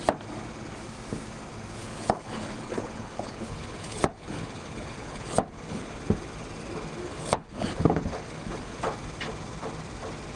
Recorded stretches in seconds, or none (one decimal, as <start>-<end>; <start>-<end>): 0.0-1.8; 6.0-7.0; 8.8-10.4